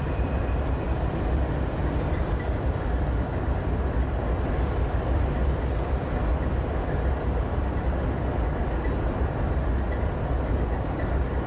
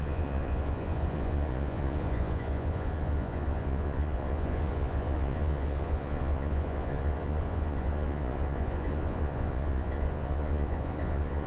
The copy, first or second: second